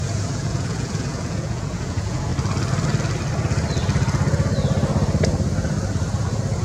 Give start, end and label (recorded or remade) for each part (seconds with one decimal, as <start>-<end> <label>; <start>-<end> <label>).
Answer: 0.0-2.3 remade; 2.3-6.6 recorded